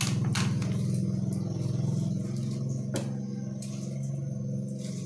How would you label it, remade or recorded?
recorded